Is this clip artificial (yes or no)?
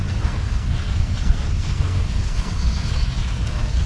yes